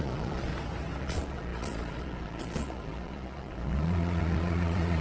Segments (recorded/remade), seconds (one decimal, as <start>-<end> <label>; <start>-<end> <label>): 0.0-0.5 remade; 0.5-1.0 recorded; 1.0-5.0 remade